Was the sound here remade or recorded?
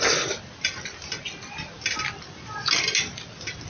recorded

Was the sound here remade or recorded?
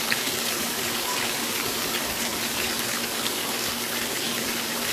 remade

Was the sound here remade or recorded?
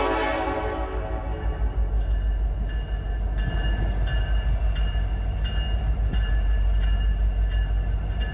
recorded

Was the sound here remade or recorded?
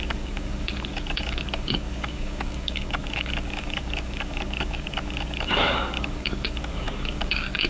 remade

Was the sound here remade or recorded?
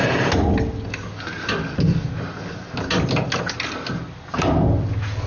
recorded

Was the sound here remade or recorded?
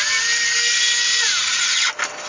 recorded